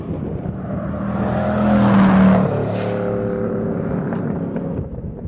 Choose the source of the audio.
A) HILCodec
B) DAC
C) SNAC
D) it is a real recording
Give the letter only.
D